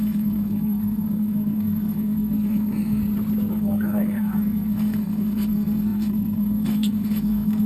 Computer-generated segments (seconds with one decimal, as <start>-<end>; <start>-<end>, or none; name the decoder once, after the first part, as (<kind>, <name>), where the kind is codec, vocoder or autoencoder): 0.0-3.0 (codec, SNAC); 3.5-7.7